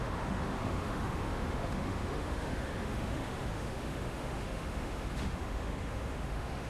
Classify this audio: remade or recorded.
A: remade